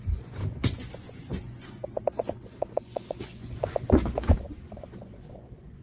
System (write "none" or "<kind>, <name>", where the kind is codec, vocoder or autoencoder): vocoder, Vocos